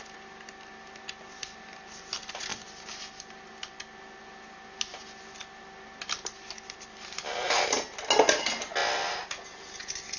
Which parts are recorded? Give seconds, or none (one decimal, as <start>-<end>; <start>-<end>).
0.0-10.2